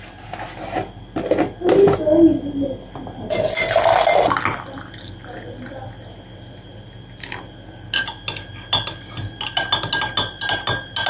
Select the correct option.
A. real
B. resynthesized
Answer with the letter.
A